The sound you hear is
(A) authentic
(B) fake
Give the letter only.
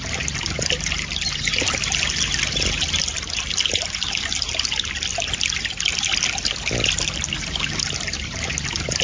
A